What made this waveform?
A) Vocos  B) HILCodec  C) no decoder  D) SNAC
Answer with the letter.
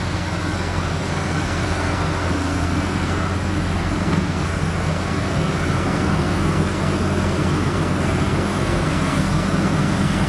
D